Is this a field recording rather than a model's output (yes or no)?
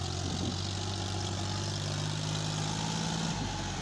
yes